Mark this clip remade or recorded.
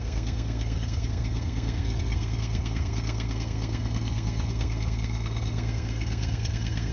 remade